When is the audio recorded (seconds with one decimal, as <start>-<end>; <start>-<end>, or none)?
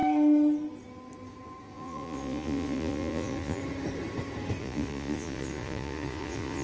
0.0-1.6; 3.6-4.6